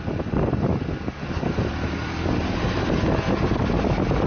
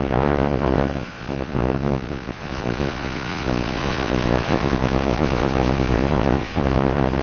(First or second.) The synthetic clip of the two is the second